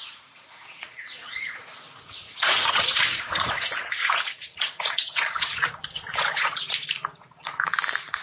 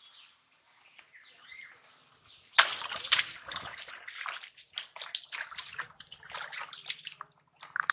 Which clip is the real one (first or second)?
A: second